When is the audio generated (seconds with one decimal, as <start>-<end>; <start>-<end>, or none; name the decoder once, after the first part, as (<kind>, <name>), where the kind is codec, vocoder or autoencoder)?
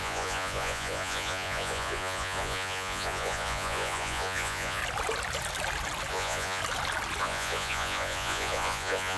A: 0.0-4.8 (vocoder, Vocos); 6.1-6.6; 7.2-9.2